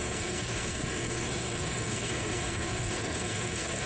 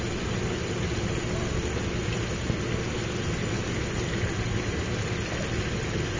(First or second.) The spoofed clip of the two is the first